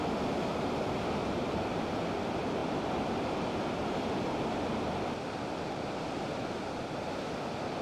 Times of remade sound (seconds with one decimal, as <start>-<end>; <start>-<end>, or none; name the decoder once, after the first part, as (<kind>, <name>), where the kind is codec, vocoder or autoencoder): 1.2-1.8 (vocoder, BigVGAN v2)